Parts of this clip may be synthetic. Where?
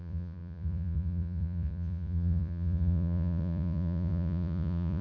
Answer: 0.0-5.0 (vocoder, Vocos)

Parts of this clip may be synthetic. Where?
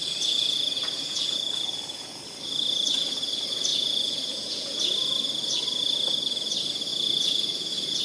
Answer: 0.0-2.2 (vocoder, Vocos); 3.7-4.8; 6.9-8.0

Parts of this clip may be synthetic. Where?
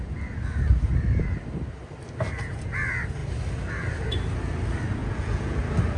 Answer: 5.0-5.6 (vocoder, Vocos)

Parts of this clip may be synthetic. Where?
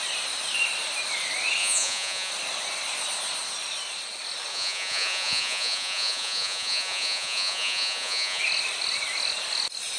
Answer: 1.6-2.3 (vocoder, Vocos); 4.5-8.4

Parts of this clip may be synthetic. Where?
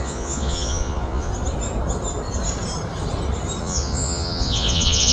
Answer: 0.0-1.3 (vocoder, Vocos); 3.6-5.1